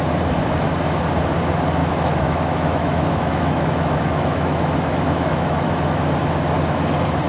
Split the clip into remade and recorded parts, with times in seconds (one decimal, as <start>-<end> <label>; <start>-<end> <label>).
0.0-1.8 recorded; 1.8-6.1 remade; 6.1-7.3 recorded